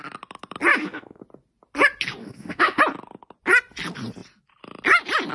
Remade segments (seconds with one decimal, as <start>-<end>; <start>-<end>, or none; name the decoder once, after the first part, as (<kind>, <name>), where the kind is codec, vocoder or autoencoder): 0.7-1.2 (autoencoder, DAC-VAE); 2.2-2.8